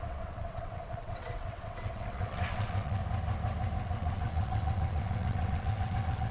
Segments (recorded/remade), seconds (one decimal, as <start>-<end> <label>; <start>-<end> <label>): 0.0-3.0 remade; 3.0-3.8 recorded; 3.8-6.3 remade